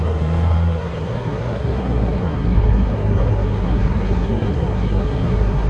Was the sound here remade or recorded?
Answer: remade